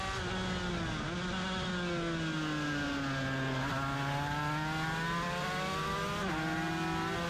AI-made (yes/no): no